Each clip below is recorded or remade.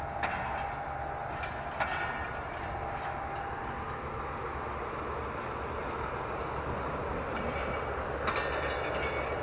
recorded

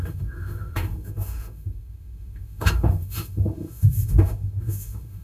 remade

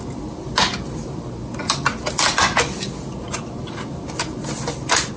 recorded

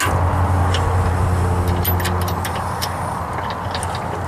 recorded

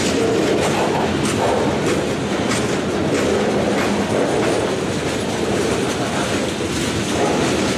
recorded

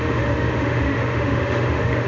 remade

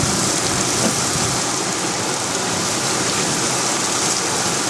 recorded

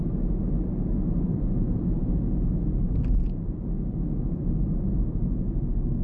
recorded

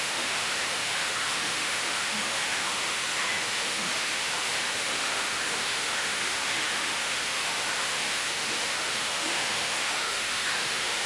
remade